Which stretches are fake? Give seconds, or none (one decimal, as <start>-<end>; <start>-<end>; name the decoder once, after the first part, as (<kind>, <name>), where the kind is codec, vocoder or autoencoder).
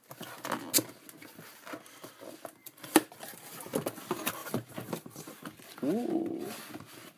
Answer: 2.6-3.4 (vocoder, BigVGAN v2); 4.4-5.4